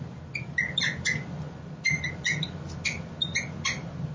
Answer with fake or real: real